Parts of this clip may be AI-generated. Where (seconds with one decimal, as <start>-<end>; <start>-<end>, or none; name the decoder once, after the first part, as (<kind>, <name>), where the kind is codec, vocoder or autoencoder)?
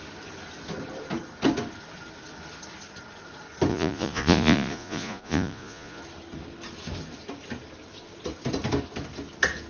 3.7-6.0 (vocoder, Vocos)